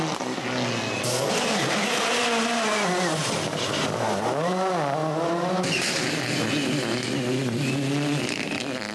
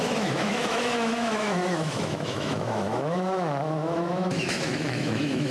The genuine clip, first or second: first